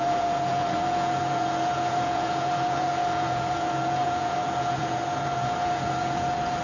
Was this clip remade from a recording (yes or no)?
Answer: yes